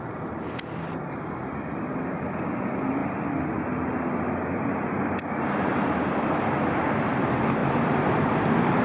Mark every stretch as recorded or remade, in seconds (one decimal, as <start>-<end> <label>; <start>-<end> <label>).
0.0-3.0 recorded; 3.0-3.5 remade; 3.5-7.6 recorded; 7.6-8.8 remade